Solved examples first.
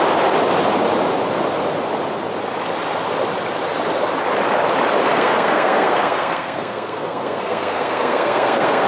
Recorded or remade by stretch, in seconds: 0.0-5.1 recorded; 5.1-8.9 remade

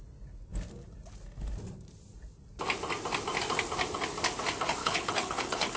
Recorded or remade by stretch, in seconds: 0.0-4.8 recorded; 4.8-5.8 remade

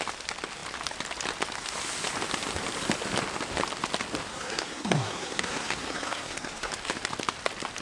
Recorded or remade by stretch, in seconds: 0.0-4.3 recorded; 4.3-6.7 remade; 6.7-7.8 recorded

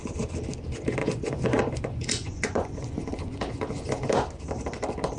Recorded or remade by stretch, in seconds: 0.0-1.0 recorded; 1.0-4.1 remade; 4.1-5.2 recorded

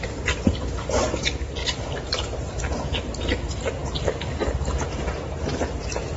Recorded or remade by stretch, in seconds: 0.0-1.6 recorded; 1.6-2.5 remade; 2.5-5.3 recorded; 5.3-6.2 remade

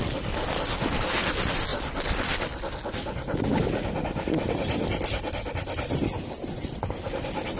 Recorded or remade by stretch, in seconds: 0.0-7.6 recorded

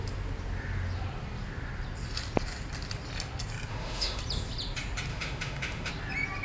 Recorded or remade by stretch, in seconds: 0.0-3.7 recorded; 3.7-4.2 remade; 4.2-5.1 recorded; 5.1-5.9 remade; 5.9-6.4 recorded

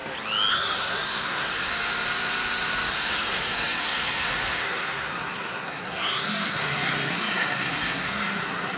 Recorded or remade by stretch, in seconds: 0.0-0.5 recorded; 0.5-1.7 remade; 1.7-2.9 recorded; 2.9-8.8 remade